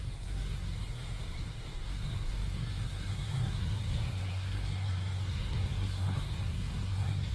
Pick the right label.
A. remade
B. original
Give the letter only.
A